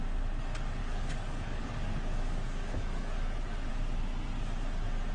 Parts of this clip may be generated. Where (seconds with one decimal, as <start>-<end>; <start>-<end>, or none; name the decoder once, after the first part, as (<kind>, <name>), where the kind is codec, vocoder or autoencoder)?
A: 0.8-3.7 (codec, DAC)